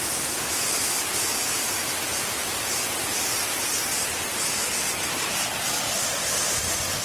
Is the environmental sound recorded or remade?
recorded